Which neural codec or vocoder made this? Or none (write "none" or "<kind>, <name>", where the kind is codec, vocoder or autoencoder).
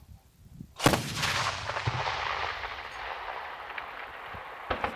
none